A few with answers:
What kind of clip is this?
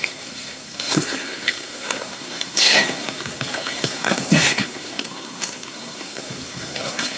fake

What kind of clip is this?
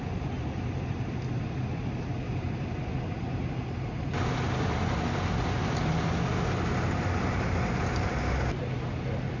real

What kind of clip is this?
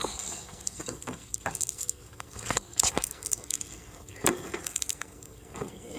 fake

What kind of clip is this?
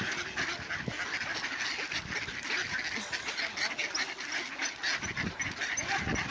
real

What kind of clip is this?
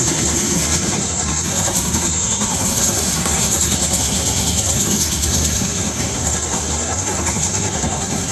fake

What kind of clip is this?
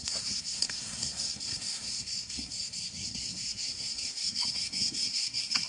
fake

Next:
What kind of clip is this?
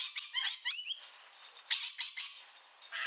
real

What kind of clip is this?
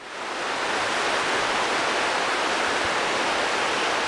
real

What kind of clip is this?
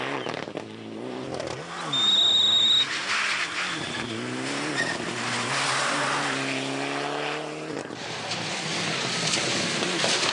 real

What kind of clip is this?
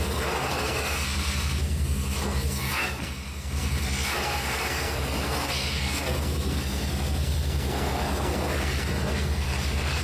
fake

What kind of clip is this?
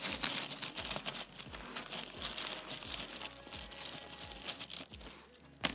real